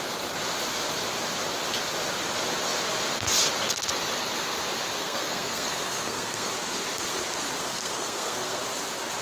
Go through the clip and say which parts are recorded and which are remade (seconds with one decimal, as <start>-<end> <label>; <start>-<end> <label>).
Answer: 0.0-5.0 recorded; 5.0-6.5 remade; 6.5-7.6 recorded; 7.6-8.6 remade; 8.6-9.2 recorded